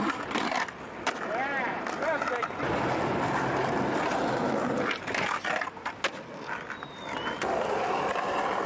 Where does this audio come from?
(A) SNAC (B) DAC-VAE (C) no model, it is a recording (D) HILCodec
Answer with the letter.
C